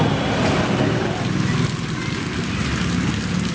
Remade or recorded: recorded